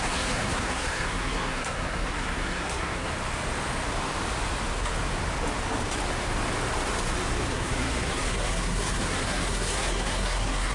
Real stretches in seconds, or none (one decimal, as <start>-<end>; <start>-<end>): 3.1-7.5